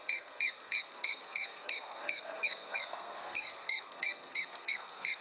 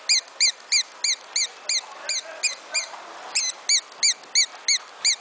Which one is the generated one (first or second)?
first